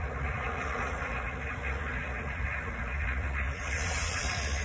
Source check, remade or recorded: remade